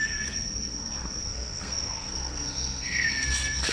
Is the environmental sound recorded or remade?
remade